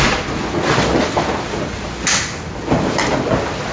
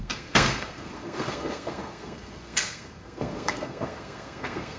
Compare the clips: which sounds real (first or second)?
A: first